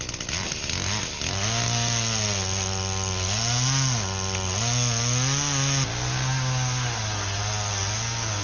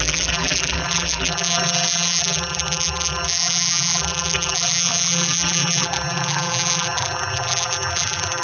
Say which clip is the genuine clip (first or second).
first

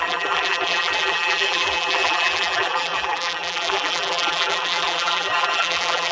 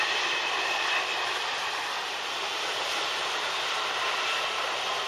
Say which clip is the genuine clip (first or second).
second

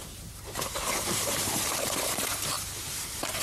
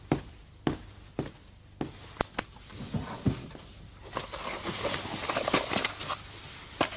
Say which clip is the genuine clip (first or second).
second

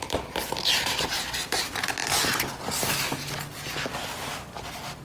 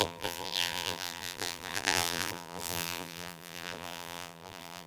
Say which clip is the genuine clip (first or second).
first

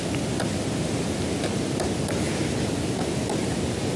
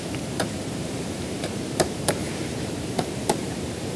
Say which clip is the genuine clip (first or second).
first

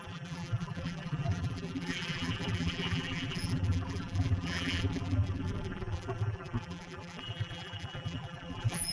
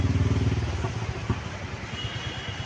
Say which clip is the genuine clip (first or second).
second